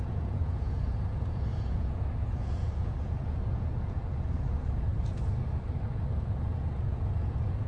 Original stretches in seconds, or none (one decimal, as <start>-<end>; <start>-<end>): 4.9-6.4